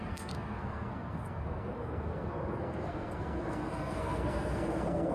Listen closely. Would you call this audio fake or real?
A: fake